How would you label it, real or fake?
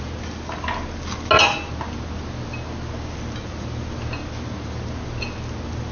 real